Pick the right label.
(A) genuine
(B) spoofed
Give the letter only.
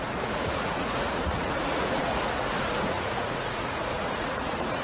B